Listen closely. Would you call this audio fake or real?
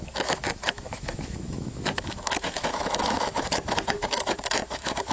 fake